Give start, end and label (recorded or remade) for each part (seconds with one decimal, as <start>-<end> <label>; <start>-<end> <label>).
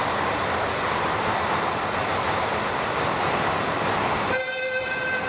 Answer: 0.0-2.5 remade; 2.5-3.6 recorded; 3.6-5.3 remade